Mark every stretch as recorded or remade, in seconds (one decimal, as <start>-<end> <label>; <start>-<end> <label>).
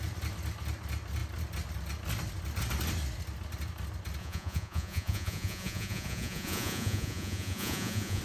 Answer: 0.0-4.2 recorded; 4.2-8.2 remade